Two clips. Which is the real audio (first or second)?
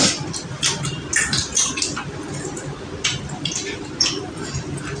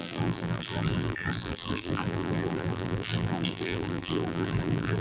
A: first